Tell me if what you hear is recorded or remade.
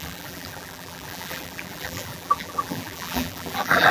remade